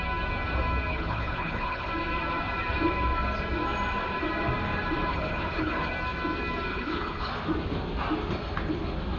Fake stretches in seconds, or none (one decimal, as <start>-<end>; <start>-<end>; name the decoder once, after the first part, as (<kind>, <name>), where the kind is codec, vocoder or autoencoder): 0.9-1.9 (codec, HILCodec); 5.1-5.9; 6.7-7.3